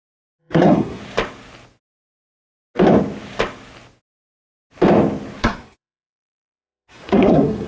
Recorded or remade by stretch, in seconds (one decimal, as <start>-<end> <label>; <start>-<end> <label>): 0.0-0.4 recorded; 0.4-1.0 remade; 1.0-5.4 recorded; 5.4-7.7 remade